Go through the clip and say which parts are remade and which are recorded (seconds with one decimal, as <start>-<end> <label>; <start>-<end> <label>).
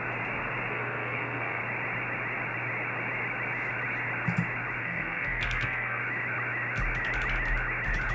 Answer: 0.0-0.7 recorded; 0.7-1.6 remade; 1.6-4.8 recorded; 4.8-6.0 remade; 6.0-8.1 recorded